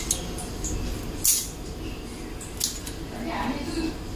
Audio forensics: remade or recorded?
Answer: recorded